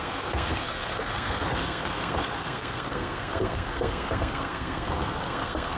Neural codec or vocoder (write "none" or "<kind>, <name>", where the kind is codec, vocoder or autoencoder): codec, SNAC